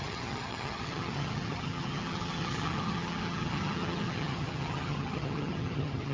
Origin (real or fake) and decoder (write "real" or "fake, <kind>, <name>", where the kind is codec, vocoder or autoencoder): fake, vocoder, HiFi-GAN